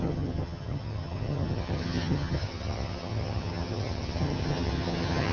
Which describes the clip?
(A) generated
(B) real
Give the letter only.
A